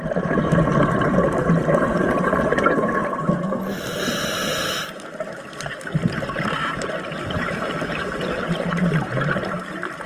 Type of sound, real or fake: fake